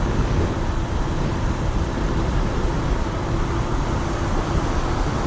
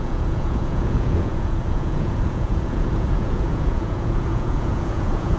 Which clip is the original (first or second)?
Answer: first